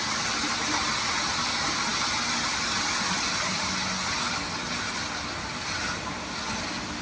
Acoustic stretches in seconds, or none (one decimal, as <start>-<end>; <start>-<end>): 0.0-7.0